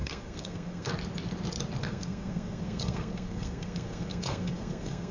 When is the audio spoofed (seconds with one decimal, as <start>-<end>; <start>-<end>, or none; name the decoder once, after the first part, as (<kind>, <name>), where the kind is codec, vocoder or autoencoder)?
0.0-0.9 (codec, SNAC); 1.8-5.1